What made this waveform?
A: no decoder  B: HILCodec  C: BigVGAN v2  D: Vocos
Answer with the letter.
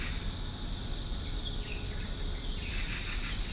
A